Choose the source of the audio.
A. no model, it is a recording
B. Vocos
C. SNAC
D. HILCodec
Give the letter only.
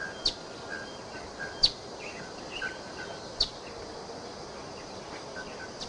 A